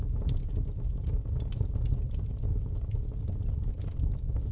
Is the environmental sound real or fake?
real